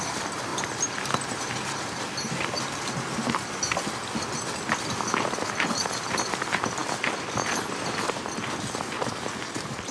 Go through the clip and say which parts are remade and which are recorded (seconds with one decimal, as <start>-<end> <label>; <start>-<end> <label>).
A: 0.0-9.9 recorded